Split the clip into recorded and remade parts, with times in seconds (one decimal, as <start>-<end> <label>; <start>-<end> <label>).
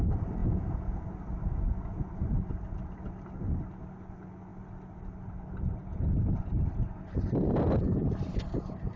0.0-0.4 recorded; 0.4-1.0 remade; 1.0-5.8 recorded; 5.8-6.5 remade; 6.5-9.0 recorded